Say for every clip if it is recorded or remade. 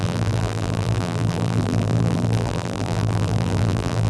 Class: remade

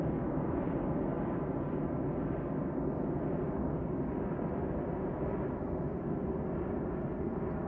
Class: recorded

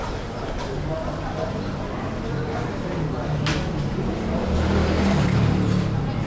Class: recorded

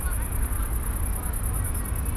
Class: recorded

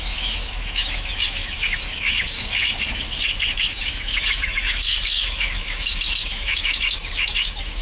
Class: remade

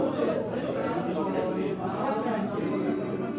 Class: remade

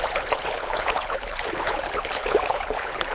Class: remade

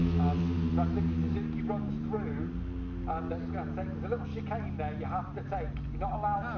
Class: recorded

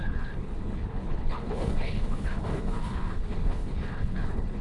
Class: remade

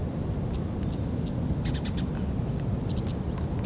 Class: recorded